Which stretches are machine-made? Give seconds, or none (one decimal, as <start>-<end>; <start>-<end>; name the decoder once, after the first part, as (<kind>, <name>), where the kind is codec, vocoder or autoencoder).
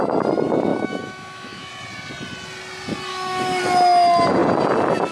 0.7-1.7 (autoencoder, DAC-VAE); 3.1-3.6